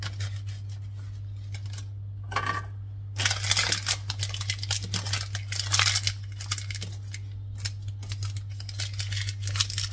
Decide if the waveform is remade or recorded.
recorded